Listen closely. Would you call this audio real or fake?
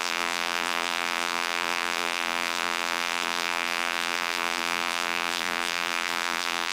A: fake